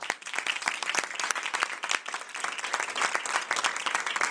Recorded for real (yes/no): yes